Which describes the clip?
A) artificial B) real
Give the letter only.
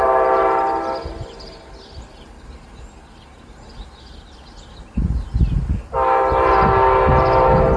B